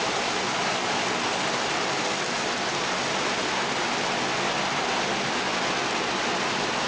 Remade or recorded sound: recorded